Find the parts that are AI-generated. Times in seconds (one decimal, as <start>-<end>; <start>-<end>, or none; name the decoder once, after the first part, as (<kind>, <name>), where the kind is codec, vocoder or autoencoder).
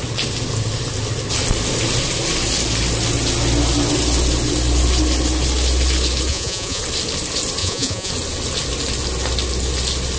6.3-6.8 (vocoder, Vocos); 7.6-8.1